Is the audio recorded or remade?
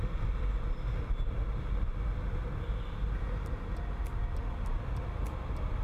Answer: recorded